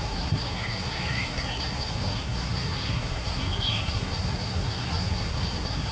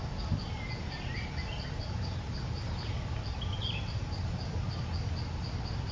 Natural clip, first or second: second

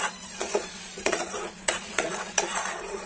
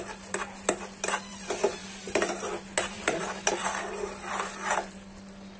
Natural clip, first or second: second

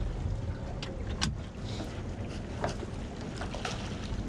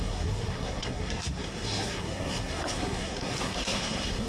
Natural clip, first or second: first